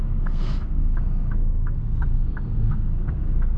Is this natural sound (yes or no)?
no